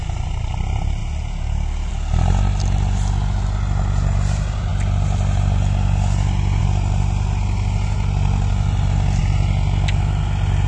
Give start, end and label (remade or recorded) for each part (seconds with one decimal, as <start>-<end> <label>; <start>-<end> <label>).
0.0-10.7 recorded